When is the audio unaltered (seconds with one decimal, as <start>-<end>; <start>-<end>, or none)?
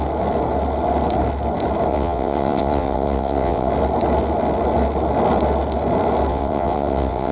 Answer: 0.0-1.9; 3.7-6.3